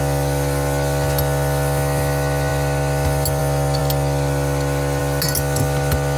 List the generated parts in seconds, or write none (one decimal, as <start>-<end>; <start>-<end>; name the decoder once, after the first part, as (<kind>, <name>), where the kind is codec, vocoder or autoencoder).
none